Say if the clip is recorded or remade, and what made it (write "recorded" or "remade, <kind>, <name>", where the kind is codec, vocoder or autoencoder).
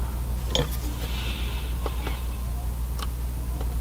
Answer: recorded